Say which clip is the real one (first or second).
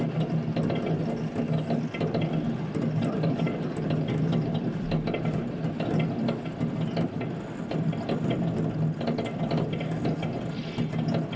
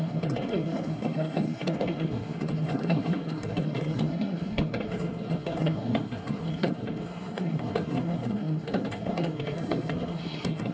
first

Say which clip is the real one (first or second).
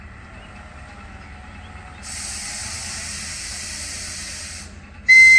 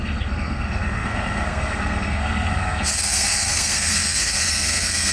first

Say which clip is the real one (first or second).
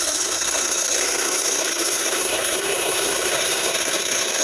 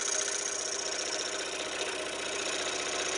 second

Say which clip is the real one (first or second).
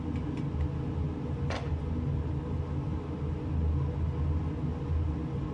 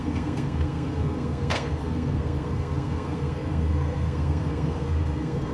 first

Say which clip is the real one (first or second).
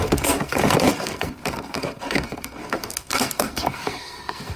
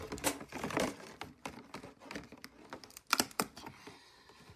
second